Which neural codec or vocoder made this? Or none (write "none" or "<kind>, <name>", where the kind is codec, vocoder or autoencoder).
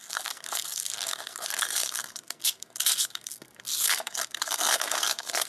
codec, SNAC